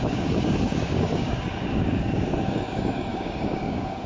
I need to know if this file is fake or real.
fake